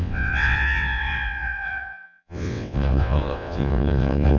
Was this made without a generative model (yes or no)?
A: no